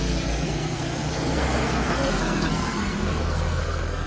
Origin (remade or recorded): remade